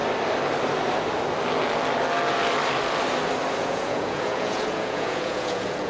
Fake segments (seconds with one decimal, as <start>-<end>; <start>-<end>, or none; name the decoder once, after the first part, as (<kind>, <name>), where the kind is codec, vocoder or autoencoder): 3.5-5.9 (vocoder, Vocos)